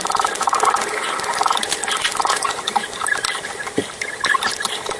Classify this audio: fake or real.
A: real